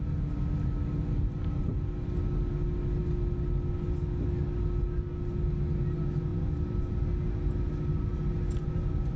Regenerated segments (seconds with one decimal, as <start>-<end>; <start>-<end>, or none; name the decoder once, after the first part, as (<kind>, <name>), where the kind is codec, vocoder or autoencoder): none